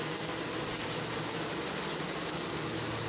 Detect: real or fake real